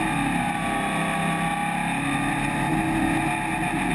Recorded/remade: recorded